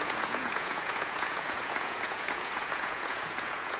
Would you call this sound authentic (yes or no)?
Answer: no